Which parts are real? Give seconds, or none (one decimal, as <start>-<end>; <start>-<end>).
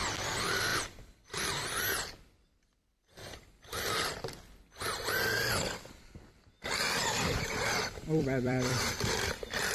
0.0-0.7; 2.1-7.0